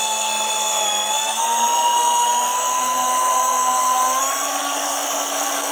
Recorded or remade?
remade